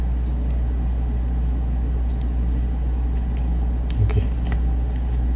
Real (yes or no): yes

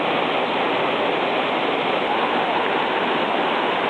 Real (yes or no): yes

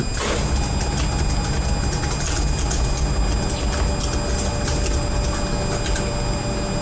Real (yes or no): yes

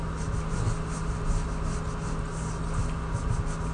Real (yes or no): yes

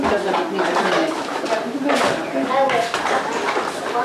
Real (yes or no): yes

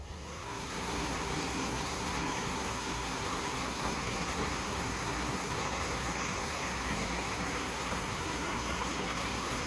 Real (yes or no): no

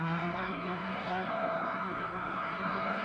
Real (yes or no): no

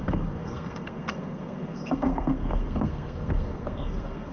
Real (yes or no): no